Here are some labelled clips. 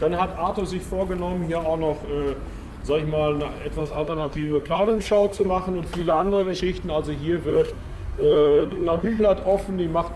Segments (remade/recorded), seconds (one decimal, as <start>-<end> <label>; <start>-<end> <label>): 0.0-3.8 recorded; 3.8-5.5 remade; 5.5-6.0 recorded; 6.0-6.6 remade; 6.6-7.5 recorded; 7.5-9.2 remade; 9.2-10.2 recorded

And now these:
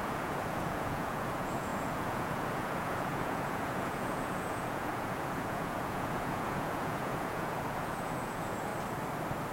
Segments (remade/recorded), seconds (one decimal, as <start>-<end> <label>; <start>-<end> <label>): 0.0-8.7 remade; 8.7-9.5 recorded

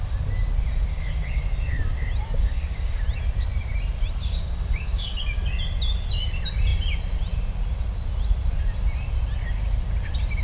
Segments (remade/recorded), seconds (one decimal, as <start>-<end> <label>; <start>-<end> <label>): 0.0-0.9 recorded; 0.9-1.4 remade; 1.4-2.4 recorded; 2.4-3.0 remade; 3.0-4.2 recorded; 4.2-5.2 remade; 5.2-10.4 recorded